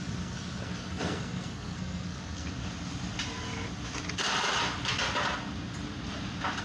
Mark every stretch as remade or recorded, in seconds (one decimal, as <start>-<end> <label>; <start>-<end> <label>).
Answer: 0.0-2.6 remade; 2.6-6.6 recorded